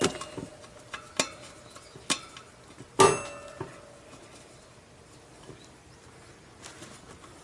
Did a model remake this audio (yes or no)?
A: no